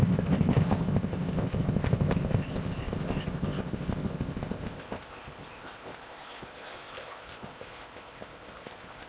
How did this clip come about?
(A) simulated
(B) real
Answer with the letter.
A